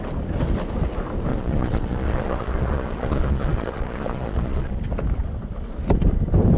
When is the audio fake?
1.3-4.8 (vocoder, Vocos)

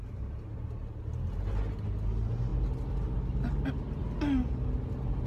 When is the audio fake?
none

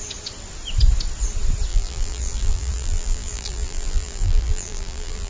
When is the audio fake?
1.7-5.3 (vocoder, BigVGAN v2)